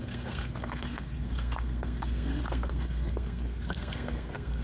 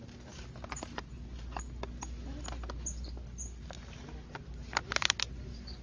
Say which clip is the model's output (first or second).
first